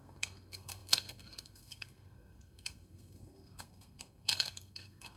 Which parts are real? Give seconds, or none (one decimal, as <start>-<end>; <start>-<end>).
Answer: none